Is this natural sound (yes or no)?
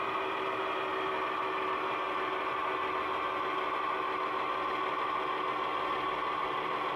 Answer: yes